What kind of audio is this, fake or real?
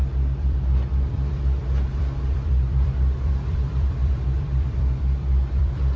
fake